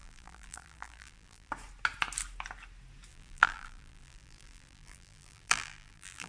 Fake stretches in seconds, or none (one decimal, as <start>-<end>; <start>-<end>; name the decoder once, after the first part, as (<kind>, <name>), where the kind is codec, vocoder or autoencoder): 0.0-1.5 (vocoder, BigVGAN v2); 3.1-6.3